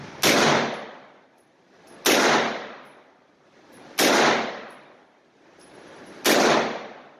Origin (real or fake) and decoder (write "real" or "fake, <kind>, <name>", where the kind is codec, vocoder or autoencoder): real